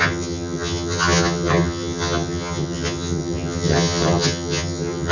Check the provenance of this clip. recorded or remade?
remade